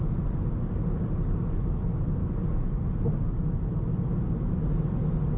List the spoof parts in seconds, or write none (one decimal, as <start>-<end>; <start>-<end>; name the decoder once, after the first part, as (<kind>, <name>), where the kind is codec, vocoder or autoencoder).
none